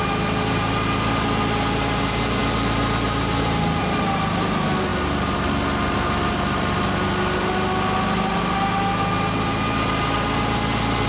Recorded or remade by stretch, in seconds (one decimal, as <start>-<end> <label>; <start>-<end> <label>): 0.0-11.1 recorded